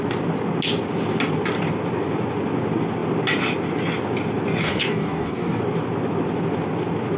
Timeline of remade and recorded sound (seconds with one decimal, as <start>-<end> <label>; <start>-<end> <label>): 0.0-4.6 recorded; 4.6-5.6 remade; 5.6-7.2 recorded